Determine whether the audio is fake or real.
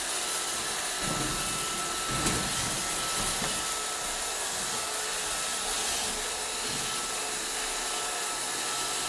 real